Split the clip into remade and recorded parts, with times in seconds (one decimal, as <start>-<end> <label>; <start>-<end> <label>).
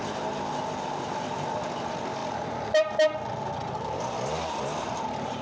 0.0-5.4 recorded